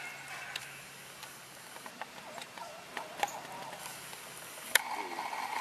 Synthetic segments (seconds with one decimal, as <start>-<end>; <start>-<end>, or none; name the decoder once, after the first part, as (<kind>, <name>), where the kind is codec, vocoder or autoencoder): 0.6-1.9 (codec, DAC); 3.8-4.8